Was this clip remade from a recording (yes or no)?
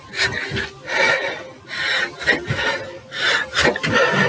no